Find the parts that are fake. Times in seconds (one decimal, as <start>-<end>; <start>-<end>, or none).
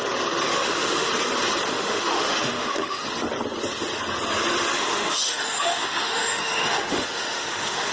0.5-1.1; 1.7-3.0; 4.7-7.9